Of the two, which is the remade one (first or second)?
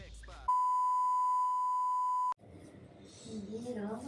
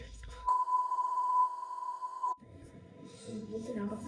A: second